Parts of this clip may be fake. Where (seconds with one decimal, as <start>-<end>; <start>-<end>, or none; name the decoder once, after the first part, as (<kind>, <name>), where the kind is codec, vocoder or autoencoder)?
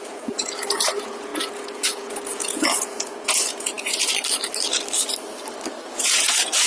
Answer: 0.0-4.1 (vocoder, Vocos); 6.0-6.7